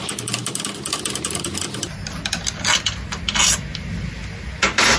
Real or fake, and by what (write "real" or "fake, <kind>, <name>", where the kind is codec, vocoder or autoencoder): real